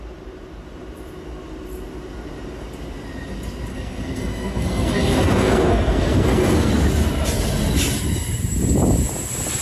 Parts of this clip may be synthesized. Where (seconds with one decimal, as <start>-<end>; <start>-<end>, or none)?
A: 3.7-6.7